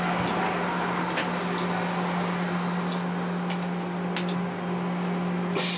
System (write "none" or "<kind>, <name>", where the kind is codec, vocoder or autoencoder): none